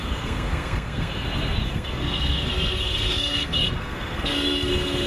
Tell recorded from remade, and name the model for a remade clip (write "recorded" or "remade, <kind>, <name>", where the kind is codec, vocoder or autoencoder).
remade, codec, SNAC